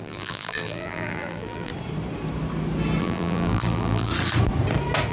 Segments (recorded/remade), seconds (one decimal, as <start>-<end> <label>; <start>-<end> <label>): 0.0-1.7 remade; 1.7-3.0 recorded; 3.0-4.1 remade; 4.1-5.1 recorded